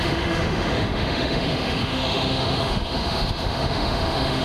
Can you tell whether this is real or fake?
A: fake